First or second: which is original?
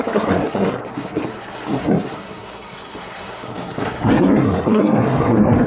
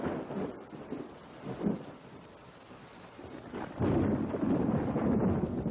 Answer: second